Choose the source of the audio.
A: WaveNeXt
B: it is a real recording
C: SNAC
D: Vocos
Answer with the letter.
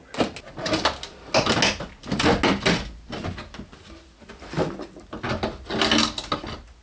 B